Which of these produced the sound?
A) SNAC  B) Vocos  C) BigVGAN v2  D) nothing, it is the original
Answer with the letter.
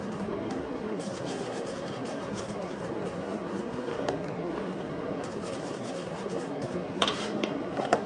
A